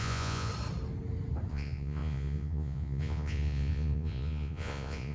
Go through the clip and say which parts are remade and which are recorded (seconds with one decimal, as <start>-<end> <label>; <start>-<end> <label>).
0.0-0.5 remade; 0.5-1.5 recorded; 1.5-5.1 remade

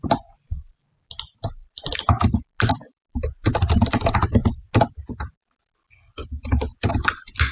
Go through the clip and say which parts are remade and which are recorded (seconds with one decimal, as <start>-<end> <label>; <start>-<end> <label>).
0.0-7.5 recorded